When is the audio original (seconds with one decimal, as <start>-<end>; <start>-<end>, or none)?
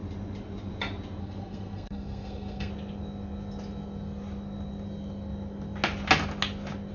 0.0-1.2; 2.7-6.9